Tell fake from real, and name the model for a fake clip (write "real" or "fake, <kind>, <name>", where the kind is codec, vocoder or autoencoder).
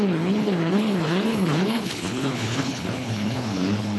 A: fake, codec, HILCodec